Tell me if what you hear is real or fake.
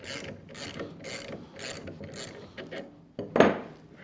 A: real